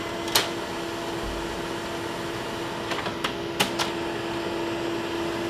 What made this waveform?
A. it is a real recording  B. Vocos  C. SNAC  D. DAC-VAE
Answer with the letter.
A